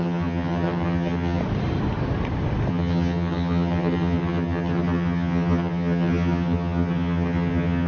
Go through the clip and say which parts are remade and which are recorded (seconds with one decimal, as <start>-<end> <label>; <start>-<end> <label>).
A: 0.0-1.4 remade; 1.4-2.7 recorded; 2.7-7.9 remade